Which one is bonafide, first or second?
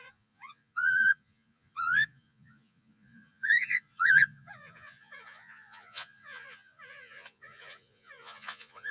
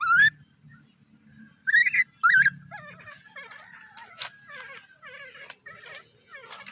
second